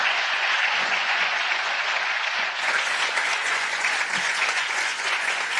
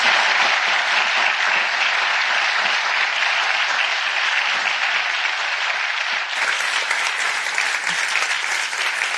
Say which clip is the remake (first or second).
first